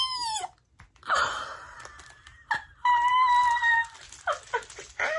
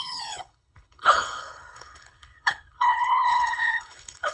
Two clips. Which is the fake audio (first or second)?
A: second